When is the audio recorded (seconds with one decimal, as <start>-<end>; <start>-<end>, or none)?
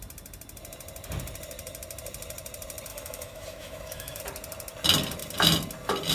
0.0-2.9; 4.2-6.1